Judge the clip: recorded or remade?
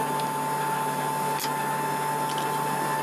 recorded